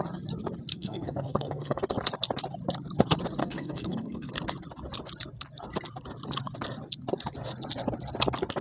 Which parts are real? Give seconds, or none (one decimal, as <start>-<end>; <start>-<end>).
0.0-0.7; 1.8-3.4; 4.3-8.6